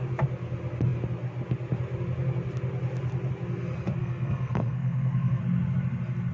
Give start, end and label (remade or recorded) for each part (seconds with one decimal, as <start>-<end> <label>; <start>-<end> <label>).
0.0-4.0 recorded; 4.0-5.4 remade; 5.4-6.3 recorded